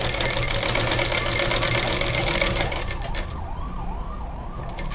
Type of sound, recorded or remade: recorded